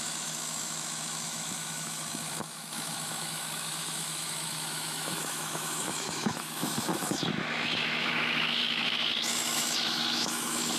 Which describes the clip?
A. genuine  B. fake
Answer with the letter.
B